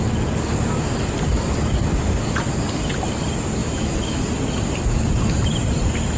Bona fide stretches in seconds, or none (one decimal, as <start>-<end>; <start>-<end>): 0.0-3.6; 4.2-6.2